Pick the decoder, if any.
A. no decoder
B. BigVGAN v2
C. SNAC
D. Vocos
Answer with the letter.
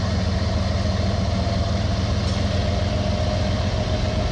A